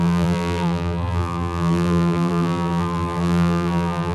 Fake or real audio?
fake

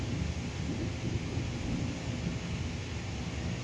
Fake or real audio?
real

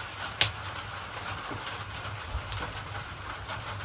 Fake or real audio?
real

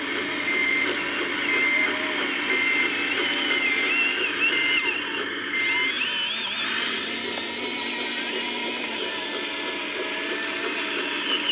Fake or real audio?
real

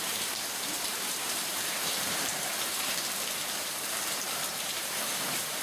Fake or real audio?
fake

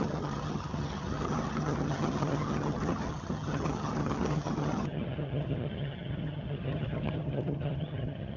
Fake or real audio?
fake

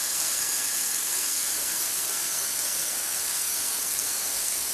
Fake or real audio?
fake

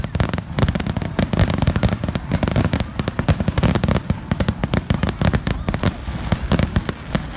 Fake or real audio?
real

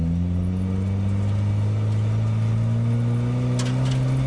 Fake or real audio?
real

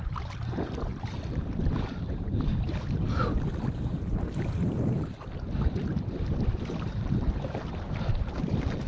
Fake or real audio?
real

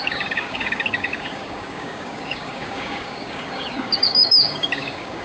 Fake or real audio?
fake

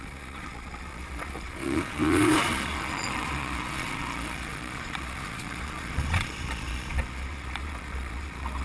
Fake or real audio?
fake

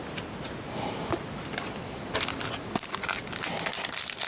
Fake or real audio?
real